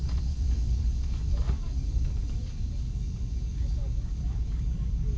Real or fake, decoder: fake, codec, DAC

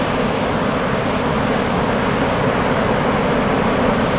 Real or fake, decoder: real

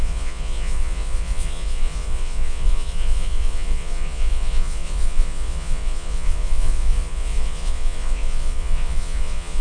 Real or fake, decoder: fake, vocoder, Vocos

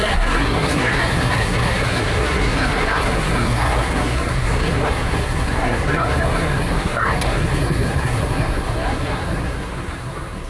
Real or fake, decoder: fake, codec, SNAC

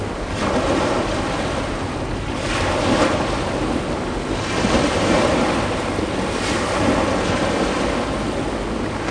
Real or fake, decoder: real